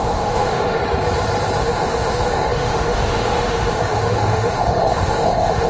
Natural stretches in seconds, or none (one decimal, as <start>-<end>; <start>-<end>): 0.8-1.6